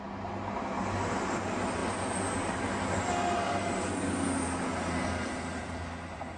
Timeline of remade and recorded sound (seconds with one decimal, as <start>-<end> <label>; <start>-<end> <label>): 0.0-6.4 recorded